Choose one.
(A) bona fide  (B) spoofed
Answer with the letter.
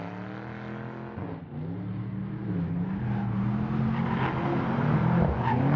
A